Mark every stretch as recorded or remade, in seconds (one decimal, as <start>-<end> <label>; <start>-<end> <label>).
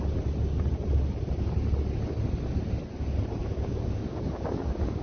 0.0-3.4 recorded; 3.4-5.0 remade